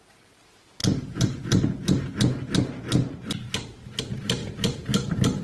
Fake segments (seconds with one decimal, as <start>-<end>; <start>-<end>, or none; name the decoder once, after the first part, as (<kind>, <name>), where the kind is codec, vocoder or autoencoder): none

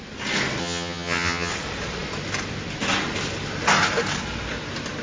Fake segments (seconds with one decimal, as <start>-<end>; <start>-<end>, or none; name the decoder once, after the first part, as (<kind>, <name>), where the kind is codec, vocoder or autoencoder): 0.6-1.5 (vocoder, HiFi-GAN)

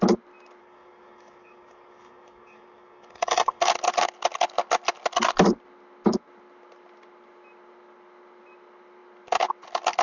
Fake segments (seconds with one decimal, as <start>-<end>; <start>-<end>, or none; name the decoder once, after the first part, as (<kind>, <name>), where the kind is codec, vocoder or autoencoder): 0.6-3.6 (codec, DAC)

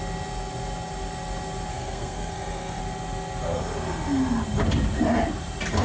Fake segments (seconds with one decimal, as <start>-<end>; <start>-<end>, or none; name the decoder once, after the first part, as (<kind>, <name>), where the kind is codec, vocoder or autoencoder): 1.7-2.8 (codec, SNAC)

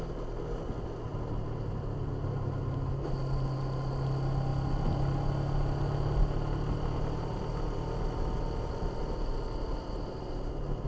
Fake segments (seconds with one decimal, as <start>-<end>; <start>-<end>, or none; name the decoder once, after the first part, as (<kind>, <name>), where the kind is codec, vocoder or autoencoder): none

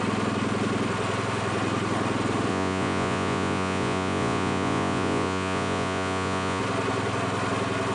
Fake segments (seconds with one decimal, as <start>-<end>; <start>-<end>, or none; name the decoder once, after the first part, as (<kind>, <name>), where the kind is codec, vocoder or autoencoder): 2.5-6.6 (vocoder, Vocos)

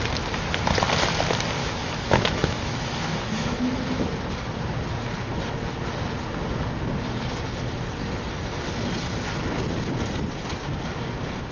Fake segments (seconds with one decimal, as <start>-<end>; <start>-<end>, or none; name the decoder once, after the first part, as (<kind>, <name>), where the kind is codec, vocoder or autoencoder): 1.6-4.1 (autoencoder, DAC-VAE)

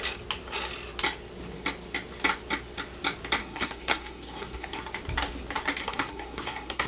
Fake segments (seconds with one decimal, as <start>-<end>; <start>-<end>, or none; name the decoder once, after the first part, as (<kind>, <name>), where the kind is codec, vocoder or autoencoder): 3.4-4.8 (codec, SNAC); 5.8-6.9